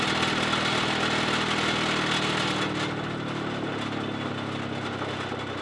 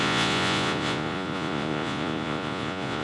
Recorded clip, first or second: first